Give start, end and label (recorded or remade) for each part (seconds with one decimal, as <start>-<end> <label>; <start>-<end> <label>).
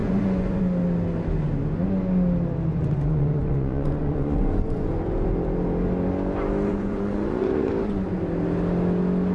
0.0-0.6 remade; 0.6-2.7 recorded; 2.7-4.9 remade; 4.9-6.7 recorded; 6.7-7.7 remade; 7.7-9.3 recorded